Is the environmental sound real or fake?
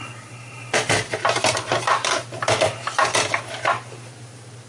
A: real